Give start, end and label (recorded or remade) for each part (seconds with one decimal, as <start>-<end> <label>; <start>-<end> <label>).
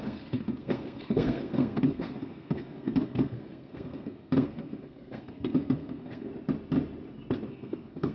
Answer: 0.0-6.3 remade; 6.3-7.5 recorded; 7.5-8.1 remade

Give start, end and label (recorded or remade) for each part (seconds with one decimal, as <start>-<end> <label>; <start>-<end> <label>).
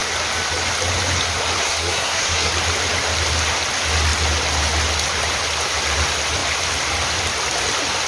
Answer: 0.0-1.6 recorded; 1.6-2.5 remade; 2.5-8.1 recorded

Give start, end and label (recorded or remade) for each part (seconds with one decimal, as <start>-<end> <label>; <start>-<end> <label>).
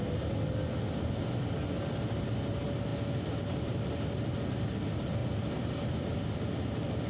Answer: 0.0-7.1 recorded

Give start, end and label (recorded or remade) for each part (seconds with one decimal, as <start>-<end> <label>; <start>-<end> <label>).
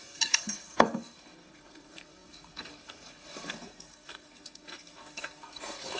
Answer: 0.0-6.0 remade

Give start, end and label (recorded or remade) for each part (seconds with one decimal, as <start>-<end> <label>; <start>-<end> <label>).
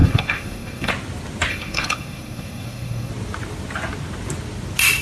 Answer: 0.0-0.9 remade; 0.9-1.5 recorded; 1.5-3.1 remade; 3.1-5.0 recorded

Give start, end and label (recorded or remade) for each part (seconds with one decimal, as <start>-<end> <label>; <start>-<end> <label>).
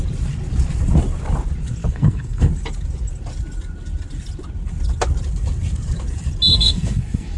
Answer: 0.0-1.8 recorded; 1.8-2.5 remade; 2.5-6.5 recorded; 6.5-7.4 remade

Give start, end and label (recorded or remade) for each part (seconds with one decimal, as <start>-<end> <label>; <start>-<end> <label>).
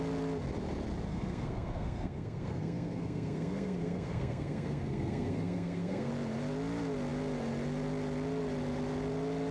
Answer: 0.0-1.1 recorded; 1.1-6.1 remade; 6.1-9.5 recorded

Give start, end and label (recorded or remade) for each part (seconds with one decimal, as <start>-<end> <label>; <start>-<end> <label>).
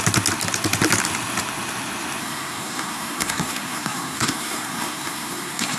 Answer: 0.0-2.2 recorded; 2.2-5.8 remade